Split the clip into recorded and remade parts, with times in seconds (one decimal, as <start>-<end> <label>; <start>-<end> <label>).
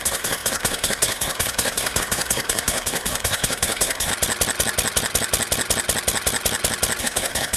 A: 0.0-4.1 remade; 4.1-7.0 recorded; 7.0-7.6 remade